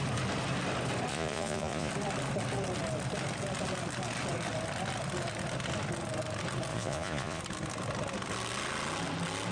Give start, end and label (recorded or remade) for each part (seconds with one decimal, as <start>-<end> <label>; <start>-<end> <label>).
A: 0.0-1.1 recorded; 1.1-1.9 remade; 1.9-6.7 recorded; 6.7-7.4 remade; 7.4-9.5 recorded